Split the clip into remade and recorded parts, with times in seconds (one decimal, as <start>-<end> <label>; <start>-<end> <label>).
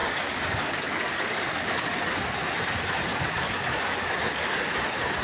0.0-1.9 remade; 1.9-3.1 recorded; 3.1-4.7 remade; 4.7-5.2 recorded